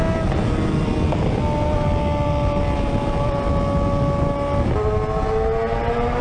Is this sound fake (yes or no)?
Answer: no